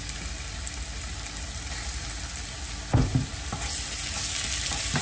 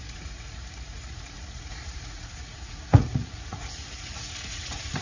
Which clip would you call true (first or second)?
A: first